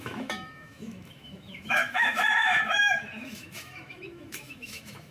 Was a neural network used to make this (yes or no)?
yes